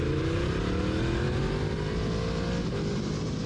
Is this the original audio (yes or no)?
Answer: yes